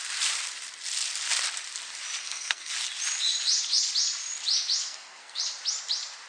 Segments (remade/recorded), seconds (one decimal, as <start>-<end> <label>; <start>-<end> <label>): 0.0-2.2 recorded; 2.2-2.7 remade; 2.7-4.8 recorded; 4.8-5.4 remade; 5.4-6.3 recorded